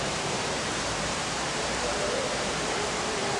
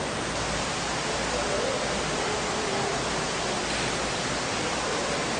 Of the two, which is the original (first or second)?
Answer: second